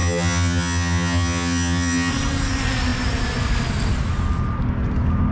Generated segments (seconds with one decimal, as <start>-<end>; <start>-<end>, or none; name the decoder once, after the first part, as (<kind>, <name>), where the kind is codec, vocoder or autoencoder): 0.0-2.1 (vocoder, HiFi-GAN)